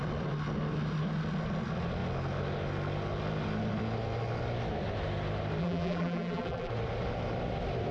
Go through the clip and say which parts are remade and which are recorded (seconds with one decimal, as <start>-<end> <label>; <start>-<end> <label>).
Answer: 0.0-5.6 recorded; 5.6-6.7 remade; 6.7-7.9 recorded

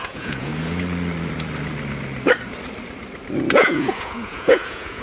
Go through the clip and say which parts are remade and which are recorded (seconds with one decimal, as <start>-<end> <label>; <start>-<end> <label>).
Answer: 0.0-0.5 remade; 0.5-3.5 recorded; 3.5-5.0 remade

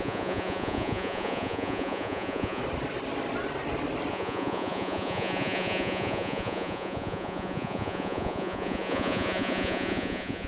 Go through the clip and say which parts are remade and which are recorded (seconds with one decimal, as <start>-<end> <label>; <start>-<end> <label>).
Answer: 0.0-2.6 remade; 2.6-4.1 recorded; 4.1-10.5 remade

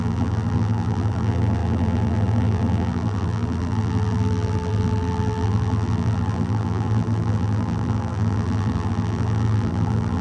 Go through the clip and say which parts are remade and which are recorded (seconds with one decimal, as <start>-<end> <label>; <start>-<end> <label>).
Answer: 0.0-10.2 remade

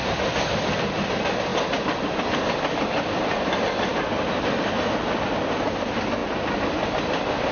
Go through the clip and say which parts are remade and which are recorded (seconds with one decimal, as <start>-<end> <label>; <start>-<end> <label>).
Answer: 0.0-7.5 recorded

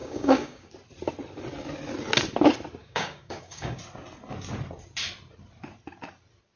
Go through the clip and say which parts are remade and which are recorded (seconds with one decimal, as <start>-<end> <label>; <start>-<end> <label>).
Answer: 0.0-0.7 remade; 0.7-2.8 recorded; 2.8-3.8 remade; 3.8-6.6 recorded

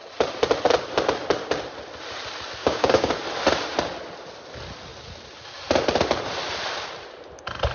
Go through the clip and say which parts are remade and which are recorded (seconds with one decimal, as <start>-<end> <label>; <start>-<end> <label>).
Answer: 0.0-2.6 recorded; 2.6-3.1 remade; 3.1-7.7 recorded